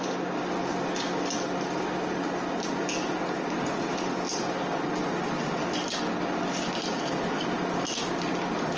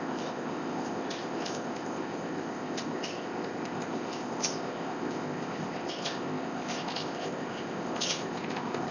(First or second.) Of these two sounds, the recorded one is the first